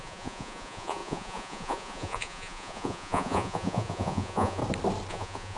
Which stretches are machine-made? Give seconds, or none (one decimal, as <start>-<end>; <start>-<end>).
0.0-4.6; 5.1-5.6